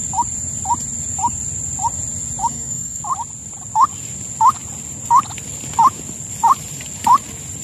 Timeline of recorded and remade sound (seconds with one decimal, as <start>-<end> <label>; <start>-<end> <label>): 0.0-2.5 recorded; 2.5-3.0 remade; 3.0-7.6 recorded